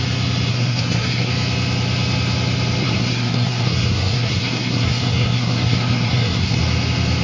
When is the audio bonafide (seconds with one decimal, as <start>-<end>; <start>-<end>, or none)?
0.0-0.5; 1.3-2.8; 6.6-7.2